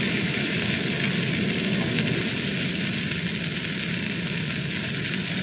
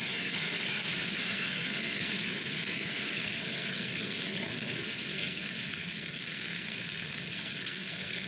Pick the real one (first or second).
first